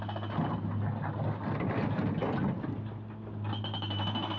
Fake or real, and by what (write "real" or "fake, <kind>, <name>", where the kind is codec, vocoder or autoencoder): real